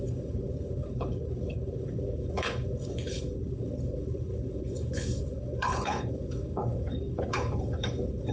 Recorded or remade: remade